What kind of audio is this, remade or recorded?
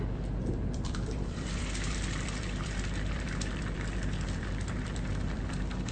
remade